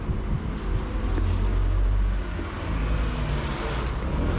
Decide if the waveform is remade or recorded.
recorded